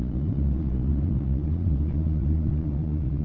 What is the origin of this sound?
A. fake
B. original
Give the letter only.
A